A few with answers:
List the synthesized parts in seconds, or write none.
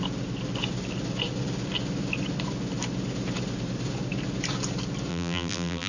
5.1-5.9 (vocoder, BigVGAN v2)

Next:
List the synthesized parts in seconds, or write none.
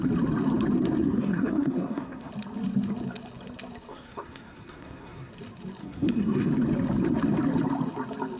1.0-2.3 (codec, SNAC); 3.9-5.3; 5.8-6.5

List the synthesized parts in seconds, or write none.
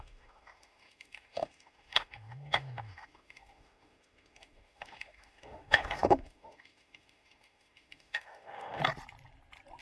0.0-8.8 (autoencoder, DAC-VAE)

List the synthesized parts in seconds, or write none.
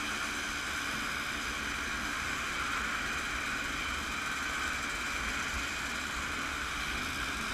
2.0-2.5 (autoencoder, DAC-VAE); 6.5-7.0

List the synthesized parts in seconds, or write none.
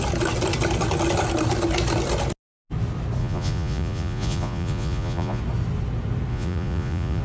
3.2-5.4 (vocoder, Vocos); 6.3-7.2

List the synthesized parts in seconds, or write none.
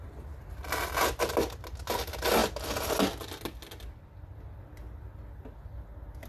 none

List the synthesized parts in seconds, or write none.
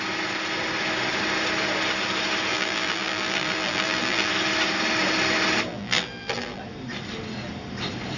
2.5-4.3 (vocoder, BigVGAN v2); 5.7-6.6